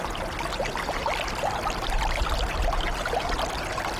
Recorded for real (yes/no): yes